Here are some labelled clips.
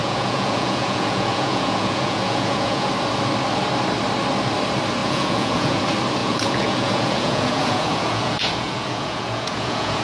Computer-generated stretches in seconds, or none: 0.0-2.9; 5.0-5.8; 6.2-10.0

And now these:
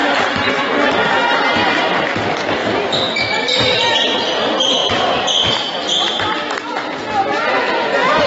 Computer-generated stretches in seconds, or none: 0.0-0.6; 1.2-2.2; 2.6-3.8

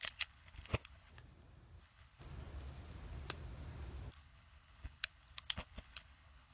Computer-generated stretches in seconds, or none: 0.0-1.1; 1.8-2.2; 4.1-6.5

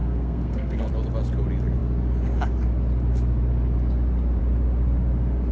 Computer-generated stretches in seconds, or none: 0.0-0.9